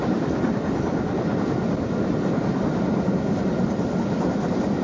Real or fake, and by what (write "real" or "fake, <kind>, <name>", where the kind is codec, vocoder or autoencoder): real